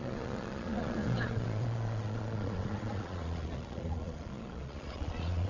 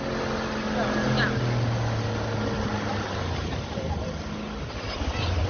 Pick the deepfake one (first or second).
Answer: first